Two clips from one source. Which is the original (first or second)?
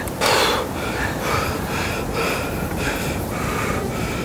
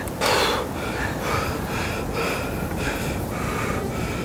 second